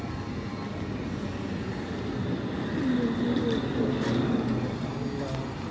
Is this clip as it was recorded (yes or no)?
yes